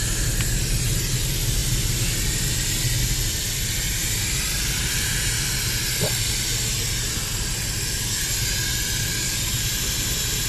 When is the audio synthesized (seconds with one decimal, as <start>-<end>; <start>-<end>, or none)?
none